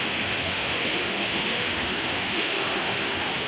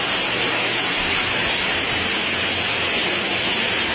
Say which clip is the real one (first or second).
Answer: second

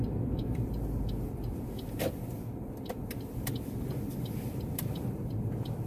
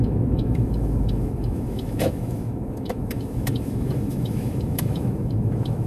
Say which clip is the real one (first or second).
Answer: first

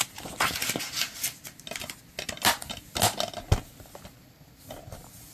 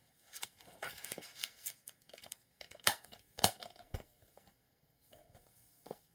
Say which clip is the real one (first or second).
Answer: first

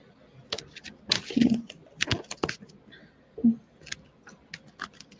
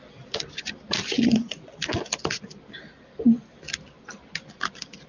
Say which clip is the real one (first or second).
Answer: first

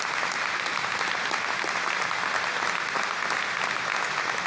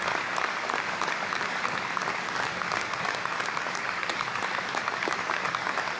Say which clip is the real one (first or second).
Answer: first